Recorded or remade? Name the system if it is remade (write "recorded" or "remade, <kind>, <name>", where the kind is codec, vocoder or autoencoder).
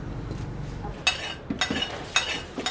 recorded